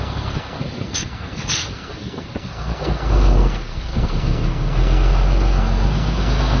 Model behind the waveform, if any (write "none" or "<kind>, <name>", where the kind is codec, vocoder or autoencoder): codec, SNAC